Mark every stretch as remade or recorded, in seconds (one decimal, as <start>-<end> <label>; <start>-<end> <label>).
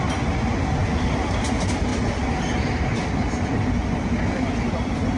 0.0-5.2 recorded